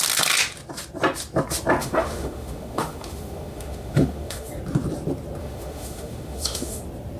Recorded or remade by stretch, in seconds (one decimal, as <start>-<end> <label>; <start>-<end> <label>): 0.0-1.8 recorded; 1.8-4.5 remade; 4.5-5.4 recorded; 5.4-6.8 remade; 6.8-7.2 recorded